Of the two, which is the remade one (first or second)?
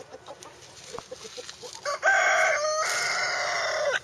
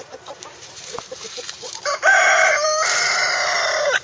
second